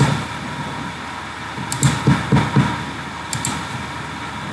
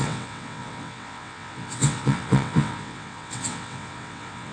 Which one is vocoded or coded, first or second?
second